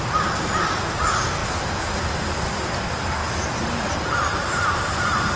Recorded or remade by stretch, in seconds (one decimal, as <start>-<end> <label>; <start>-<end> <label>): 0.0-5.4 recorded